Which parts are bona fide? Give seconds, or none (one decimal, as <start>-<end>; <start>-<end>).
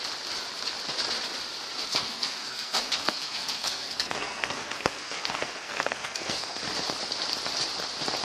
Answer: 0.0-1.9; 6.6-8.2